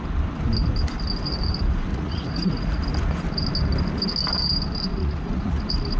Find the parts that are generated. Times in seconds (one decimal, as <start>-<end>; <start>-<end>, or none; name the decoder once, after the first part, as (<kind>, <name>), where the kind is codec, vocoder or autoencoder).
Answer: 1.9-2.8 (vocoder, Vocos); 4.9-5.6